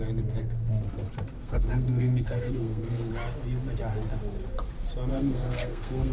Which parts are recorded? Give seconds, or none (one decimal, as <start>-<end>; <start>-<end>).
0.0-1.4; 3.1-5.1